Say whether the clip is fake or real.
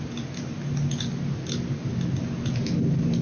real